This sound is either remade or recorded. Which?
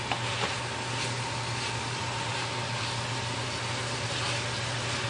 recorded